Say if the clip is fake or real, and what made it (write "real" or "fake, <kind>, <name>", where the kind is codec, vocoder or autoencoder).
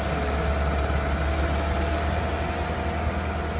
real